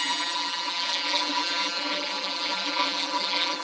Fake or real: fake